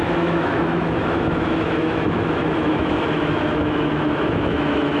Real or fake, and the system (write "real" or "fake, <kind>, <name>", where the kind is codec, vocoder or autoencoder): fake, autoencoder, DAC-VAE